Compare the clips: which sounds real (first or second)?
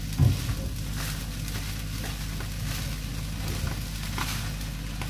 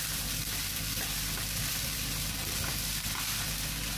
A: first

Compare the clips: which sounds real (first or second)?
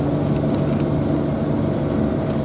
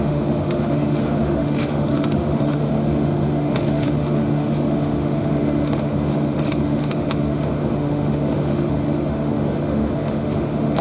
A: first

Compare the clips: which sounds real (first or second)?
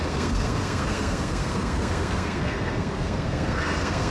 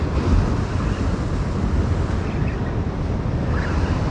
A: second